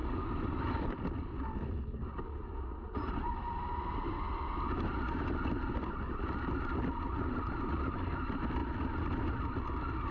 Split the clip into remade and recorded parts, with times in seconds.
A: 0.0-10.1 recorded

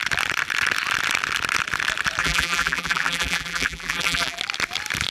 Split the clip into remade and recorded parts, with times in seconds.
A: 0.0-2.2 recorded; 2.2-4.4 remade; 4.4-5.1 recorded

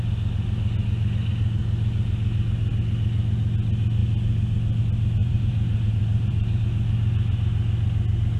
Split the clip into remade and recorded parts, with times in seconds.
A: 0.0-5.2 recorded; 5.2-6.6 remade; 6.6-8.4 recorded

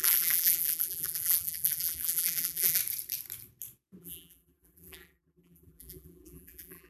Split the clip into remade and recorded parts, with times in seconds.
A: 0.0-2.8 remade; 2.8-4.0 recorded; 4.0-6.9 remade

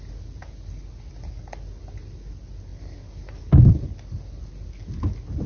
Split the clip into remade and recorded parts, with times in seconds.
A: 0.0-5.5 recorded